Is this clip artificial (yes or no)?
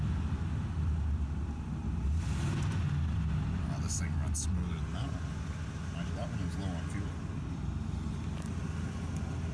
no